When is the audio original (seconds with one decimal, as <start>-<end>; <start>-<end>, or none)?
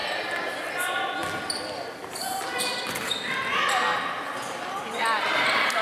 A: 0.0-5.8